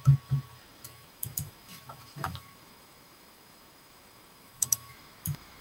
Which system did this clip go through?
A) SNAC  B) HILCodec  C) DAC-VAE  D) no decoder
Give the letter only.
C